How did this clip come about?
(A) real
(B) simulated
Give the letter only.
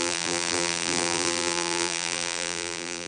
B